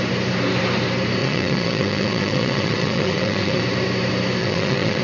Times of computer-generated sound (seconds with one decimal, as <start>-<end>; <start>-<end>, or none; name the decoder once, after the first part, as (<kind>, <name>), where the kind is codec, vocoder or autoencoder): 1.2-3.6 (vocoder, WaveNeXt); 4.4-5.0